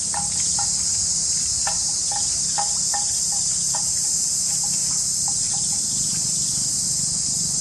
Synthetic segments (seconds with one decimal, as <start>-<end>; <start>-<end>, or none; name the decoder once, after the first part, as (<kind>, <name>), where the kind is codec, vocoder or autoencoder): 4.8-5.7 (vocoder, BigVGAN v2)